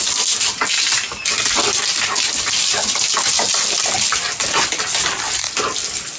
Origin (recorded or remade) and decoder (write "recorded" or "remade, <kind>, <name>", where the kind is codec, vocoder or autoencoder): recorded